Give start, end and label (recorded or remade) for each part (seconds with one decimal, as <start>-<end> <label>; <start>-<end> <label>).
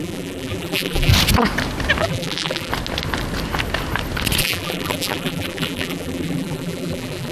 0.0-1.1 remade; 1.1-2.0 recorded; 2.0-2.7 remade; 2.7-4.4 recorded; 4.4-7.3 remade